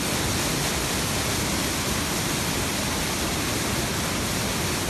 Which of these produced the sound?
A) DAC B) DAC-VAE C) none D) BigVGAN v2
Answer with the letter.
C